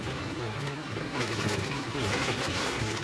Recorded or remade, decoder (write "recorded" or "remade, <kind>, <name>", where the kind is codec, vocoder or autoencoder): remade, codec, SNAC